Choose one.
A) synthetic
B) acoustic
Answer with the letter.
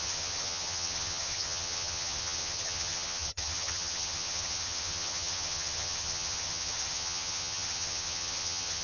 A